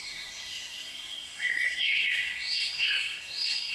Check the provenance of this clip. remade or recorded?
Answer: remade